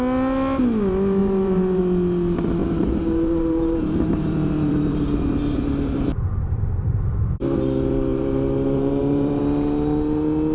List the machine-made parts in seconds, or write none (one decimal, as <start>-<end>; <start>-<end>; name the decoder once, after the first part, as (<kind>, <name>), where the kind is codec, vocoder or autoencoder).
1.2-1.8 (vocoder, BigVGAN v2); 2.6-7.2; 8.1-9.4